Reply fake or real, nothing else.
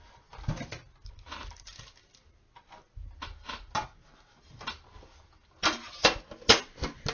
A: real